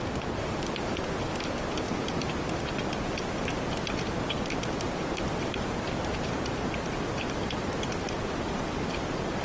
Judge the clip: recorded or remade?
recorded